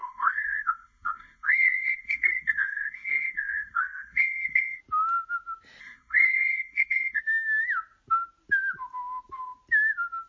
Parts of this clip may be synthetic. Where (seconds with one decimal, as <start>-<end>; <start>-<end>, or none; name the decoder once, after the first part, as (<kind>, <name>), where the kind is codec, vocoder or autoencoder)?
0.0-4.8 (codec, SNAC); 5.8-7.2